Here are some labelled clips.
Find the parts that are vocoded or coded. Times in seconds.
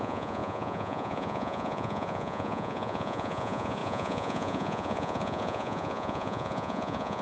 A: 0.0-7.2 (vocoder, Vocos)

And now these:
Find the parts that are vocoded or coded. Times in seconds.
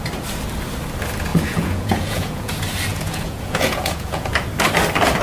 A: 1.3-2.5 (vocoder, Vocos); 2.9-4.3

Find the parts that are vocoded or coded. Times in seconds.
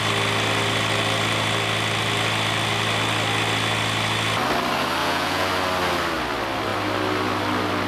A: 5.0-5.5 (vocoder, Vocos)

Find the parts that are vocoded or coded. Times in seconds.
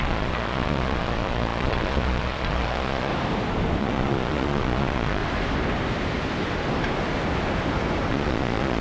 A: 0.0-3.1 (vocoder, Vocos); 3.8-5.2; 8.1-8.8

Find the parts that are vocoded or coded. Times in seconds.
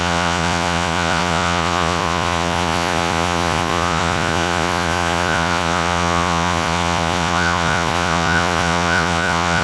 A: 0.0-9.6 (vocoder, Vocos)